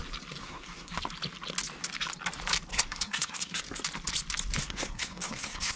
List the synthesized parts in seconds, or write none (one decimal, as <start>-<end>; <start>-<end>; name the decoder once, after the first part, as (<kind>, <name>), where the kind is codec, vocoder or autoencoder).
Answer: 0.4-1.0 (codec, SNAC); 2.7-3.6; 4.6-5.8